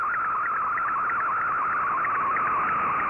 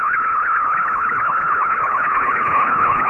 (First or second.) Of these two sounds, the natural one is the first